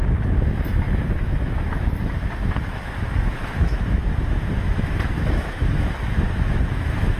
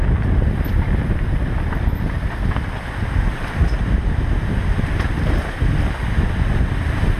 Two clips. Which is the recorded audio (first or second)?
second